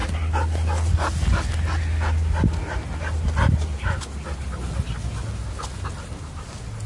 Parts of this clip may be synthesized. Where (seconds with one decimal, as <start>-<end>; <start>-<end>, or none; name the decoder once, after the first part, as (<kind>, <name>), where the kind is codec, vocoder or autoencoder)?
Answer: none